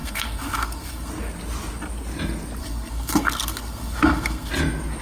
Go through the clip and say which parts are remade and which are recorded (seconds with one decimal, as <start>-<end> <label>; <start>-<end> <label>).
0.0-1.1 remade; 1.1-2.6 recorded; 2.6-4.5 remade; 4.5-5.0 recorded